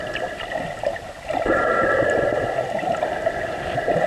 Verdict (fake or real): real